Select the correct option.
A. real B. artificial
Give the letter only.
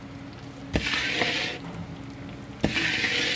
A